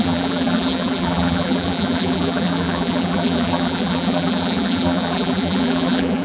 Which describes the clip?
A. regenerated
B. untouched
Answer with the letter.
A